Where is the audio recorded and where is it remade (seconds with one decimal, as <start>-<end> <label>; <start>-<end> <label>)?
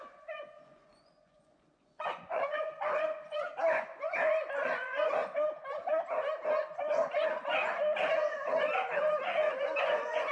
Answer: 0.0-5.2 remade; 5.2-6.5 recorded; 6.5-7.7 remade; 7.7-9.6 recorded; 9.6-10.3 remade